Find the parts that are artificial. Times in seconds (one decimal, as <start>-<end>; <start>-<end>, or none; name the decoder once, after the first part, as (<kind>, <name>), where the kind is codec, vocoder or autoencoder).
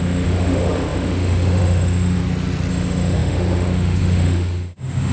0.0-2.2 (autoencoder, DAC-VAE); 2.7-5.1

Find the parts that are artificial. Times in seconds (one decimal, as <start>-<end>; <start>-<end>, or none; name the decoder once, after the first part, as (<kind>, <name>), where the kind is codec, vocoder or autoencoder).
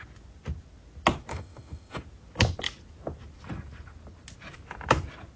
1.3-2.0 (autoencoder, DAC-VAE)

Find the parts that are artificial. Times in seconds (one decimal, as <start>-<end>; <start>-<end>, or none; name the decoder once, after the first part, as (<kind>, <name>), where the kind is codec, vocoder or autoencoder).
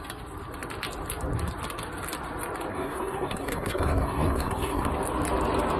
2.7-4.9 (codec, SNAC)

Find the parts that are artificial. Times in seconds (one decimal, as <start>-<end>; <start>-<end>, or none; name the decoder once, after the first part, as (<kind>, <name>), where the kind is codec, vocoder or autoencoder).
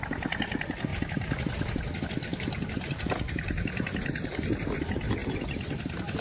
0.9-1.9 (vocoder, BigVGAN v2)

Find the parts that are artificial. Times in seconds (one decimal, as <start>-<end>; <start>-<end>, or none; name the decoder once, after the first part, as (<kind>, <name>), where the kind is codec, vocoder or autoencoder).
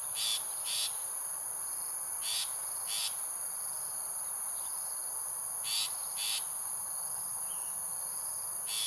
none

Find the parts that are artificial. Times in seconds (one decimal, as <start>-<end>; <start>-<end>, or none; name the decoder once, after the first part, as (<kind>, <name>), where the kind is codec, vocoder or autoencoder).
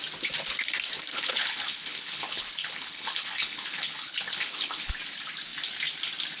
1.1-4.9 (codec, HILCodec)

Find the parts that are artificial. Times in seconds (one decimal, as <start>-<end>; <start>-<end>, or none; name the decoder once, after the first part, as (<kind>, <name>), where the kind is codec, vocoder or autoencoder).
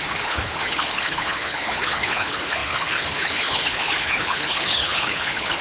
0.0-5.6 (codec, HILCodec)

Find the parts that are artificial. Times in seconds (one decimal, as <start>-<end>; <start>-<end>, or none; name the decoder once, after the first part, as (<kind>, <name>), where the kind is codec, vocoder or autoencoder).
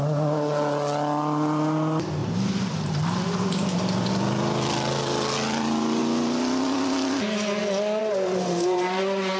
2.2-4.1 (vocoder, BigVGAN v2); 8.0-9.4